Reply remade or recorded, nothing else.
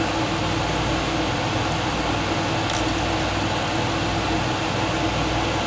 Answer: recorded